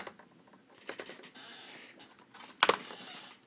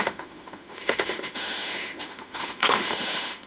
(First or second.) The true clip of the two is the first